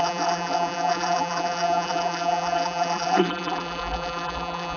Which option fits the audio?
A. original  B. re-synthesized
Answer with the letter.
B